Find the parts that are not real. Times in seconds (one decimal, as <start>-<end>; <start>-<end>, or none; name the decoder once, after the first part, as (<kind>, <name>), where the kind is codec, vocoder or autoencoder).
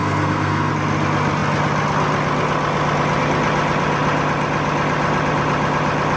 0.0-0.7 (codec, SNAC)